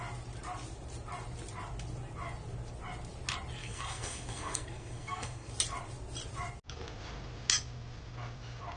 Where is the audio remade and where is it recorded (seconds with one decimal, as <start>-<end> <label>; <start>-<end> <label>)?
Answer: 0.0-3.6 recorded; 3.6-5.5 remade; 5.5-8.8 recorded